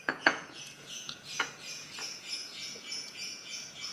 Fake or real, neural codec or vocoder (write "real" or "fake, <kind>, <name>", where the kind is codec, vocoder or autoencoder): fake, vocoder, Vocos